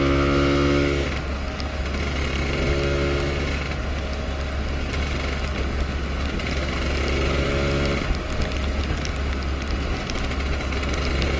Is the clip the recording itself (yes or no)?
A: yes